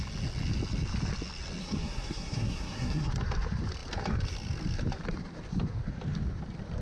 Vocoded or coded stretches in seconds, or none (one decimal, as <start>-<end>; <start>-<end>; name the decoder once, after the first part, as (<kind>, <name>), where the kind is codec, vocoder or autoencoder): 1.6-3.1 (codec, SNAC)